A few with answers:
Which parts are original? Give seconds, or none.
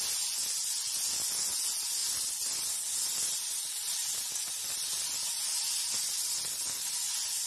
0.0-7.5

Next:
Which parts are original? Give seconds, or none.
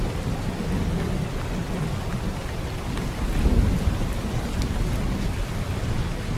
0.0-6.4